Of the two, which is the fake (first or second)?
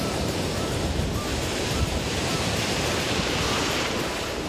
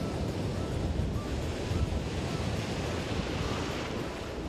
first